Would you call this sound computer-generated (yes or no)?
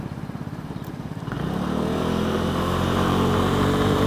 yes